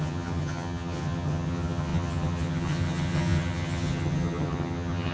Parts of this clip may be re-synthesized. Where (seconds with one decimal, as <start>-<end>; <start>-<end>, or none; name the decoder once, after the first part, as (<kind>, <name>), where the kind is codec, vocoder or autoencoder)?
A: 0.0-5.1 (vocoder, HiFi-GAN)